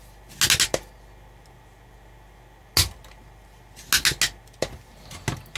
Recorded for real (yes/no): yes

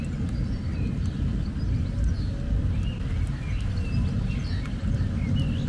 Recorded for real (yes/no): yes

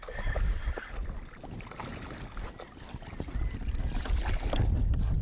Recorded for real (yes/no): yes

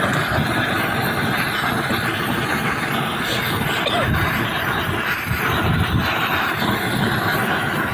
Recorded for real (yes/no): yes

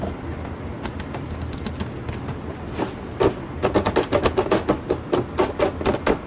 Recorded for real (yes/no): yes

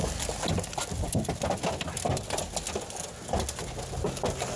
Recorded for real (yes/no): yes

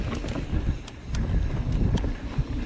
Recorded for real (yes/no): yes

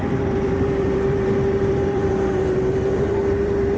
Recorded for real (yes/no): no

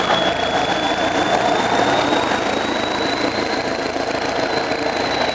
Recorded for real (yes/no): yes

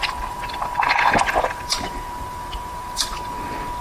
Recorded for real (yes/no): no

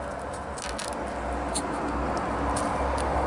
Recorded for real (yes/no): yes